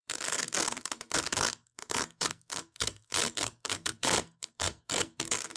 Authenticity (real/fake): fake